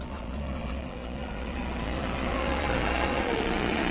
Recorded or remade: remade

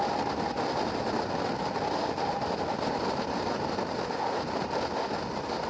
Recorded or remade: recorded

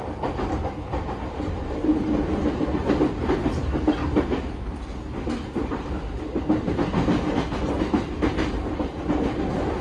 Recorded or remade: recorded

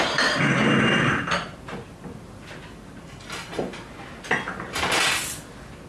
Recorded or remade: recorded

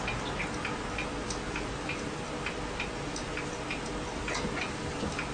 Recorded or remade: recorded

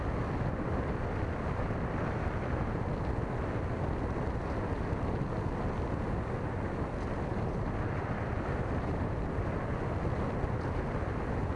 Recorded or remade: recorded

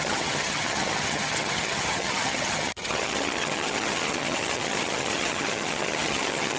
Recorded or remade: remade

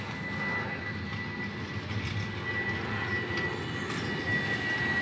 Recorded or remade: recorded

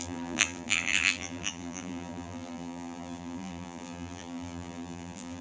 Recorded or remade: remade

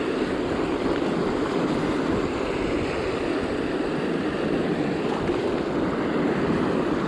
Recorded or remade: recorded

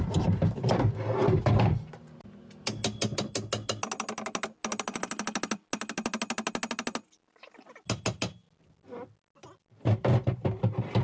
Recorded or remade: recorded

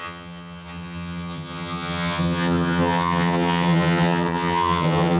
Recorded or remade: remade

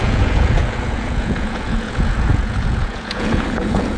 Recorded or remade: remade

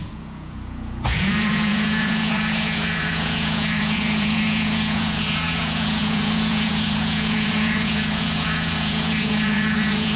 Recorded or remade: remade